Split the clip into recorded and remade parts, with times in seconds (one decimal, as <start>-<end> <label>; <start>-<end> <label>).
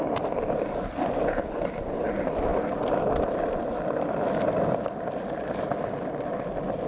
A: 0.0-6.9 recorded